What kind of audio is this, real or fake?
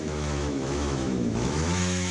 fake